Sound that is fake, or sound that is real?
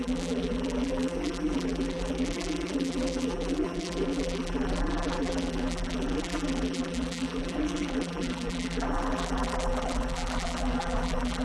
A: fake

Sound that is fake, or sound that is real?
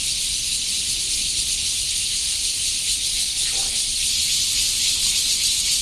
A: fake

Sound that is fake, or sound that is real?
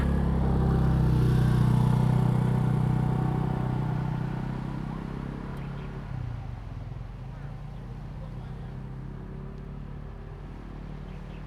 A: real